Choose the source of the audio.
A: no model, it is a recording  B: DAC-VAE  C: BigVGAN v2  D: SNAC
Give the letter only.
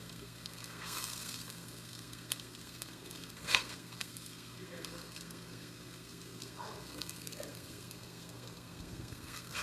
D